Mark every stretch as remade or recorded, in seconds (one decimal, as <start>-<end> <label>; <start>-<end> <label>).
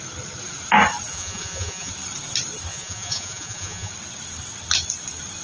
0.0-1.1 recorded; 1.1-1.9 remade; 1.9-2.7 recorded; 2.7-3.9 remade; 3.9-5.4 recorded